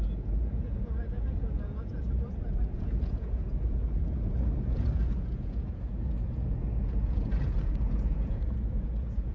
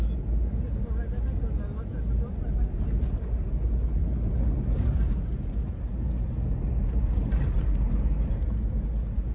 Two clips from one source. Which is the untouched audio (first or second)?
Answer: second